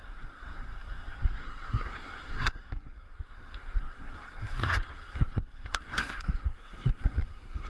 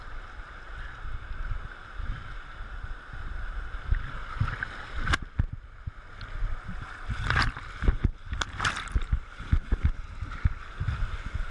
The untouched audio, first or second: second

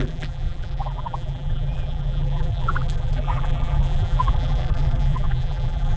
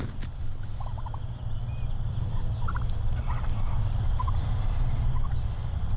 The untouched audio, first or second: second